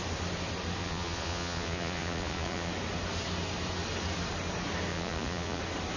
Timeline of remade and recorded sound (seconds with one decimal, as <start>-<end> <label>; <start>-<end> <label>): 0.0-0.8 recorded; 0.8-2.7 remade; 2.7-4.9 recorded; 4.9-5.6 remade; 5.6-6.0 recorded